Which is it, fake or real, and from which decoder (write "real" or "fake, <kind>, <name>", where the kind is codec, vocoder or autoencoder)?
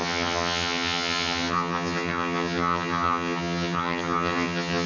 fake, vocoder, HiFi-GAN